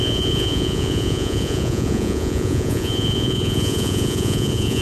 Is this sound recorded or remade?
remade